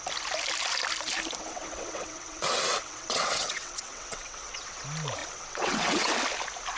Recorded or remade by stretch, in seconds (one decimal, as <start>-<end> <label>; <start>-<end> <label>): 0.0-1.5 recorded; 1.5-4.8 remade; 4.8-5.2 recorded; 5.2-6.1 remade; 6.1-6.8 recorded